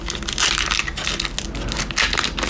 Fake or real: real